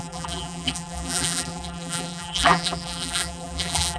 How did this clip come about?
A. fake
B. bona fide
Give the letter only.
A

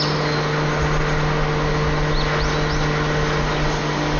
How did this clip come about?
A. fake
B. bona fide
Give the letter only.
B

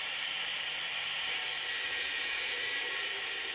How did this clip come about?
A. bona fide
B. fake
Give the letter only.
B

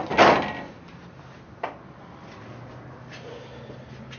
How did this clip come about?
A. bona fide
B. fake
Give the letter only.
A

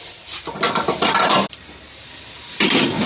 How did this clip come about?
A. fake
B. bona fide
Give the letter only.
A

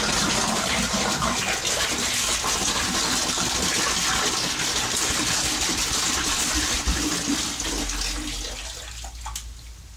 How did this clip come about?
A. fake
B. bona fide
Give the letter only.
B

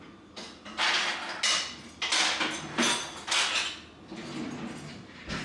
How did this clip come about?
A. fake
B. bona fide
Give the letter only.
B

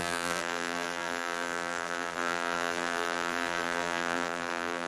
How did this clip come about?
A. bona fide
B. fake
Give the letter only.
B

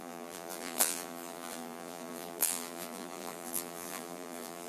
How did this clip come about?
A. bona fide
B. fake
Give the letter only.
B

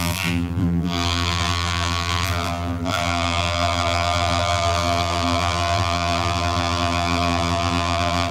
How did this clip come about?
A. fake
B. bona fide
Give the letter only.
A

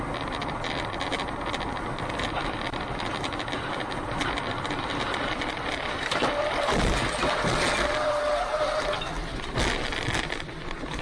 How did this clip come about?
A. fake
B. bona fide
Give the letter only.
B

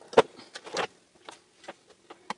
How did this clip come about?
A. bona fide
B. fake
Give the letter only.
A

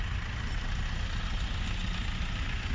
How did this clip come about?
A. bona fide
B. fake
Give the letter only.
A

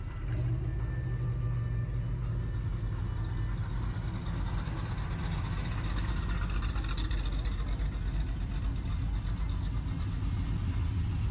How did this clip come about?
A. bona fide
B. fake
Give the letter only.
A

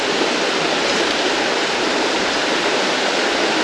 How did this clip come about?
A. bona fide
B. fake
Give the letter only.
B